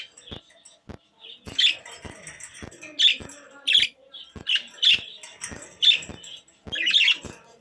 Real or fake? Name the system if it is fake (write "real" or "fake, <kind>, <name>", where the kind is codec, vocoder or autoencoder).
real